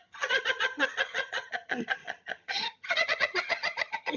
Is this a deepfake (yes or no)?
yes